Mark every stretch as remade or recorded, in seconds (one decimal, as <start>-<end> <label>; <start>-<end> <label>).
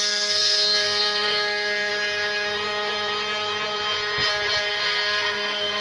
0.0-1.9 remade; 1.9-4.7 recorded; 4.7-5.8 remade